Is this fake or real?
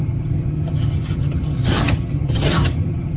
fake